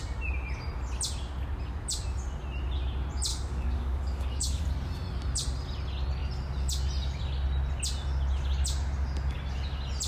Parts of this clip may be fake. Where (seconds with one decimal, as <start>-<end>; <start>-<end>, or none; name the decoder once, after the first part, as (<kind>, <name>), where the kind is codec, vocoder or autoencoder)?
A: 3.3-4.6 (codec, DAC)